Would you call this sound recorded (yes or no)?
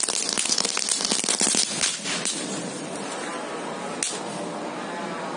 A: yes